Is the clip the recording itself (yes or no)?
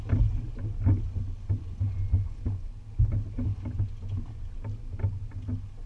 yes